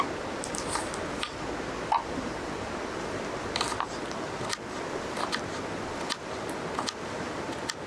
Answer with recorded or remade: recorded